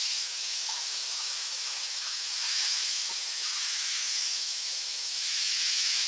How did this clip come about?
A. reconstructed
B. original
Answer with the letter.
A